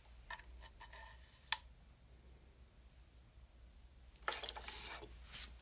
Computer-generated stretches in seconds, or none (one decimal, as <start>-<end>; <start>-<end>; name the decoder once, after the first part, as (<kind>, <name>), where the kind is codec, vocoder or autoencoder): none